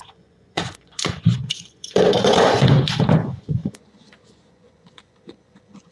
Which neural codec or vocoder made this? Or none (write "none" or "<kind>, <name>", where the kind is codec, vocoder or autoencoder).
vocoder, Vocos